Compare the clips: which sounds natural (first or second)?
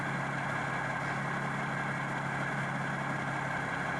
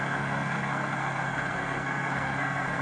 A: first